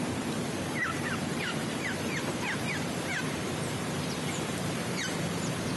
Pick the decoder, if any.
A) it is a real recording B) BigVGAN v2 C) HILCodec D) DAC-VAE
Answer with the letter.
B